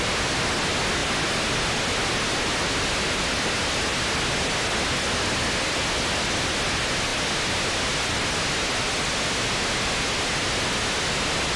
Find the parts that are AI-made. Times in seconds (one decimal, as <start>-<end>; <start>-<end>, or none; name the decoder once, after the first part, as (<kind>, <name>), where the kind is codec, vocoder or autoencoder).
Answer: none